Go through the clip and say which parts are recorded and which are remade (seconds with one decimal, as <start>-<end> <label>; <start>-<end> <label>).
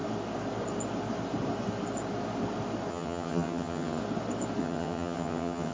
0.0-2.9 recorded; 2.9-4.0 remade; 4.0-4.6 recorded; 4.6-5.7 remade